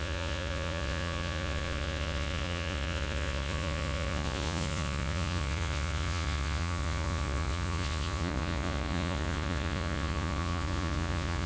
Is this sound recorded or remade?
remade